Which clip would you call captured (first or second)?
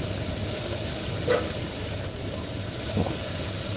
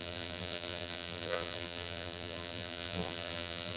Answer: first